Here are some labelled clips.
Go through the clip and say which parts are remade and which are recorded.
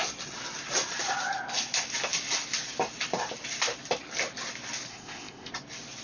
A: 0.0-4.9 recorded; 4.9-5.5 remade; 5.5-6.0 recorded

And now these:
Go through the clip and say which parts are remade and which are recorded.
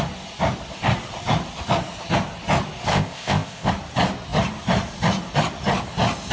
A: 0.0-2.9 recorded; 2.9-3.7 remade; 3.7-6.3 recorded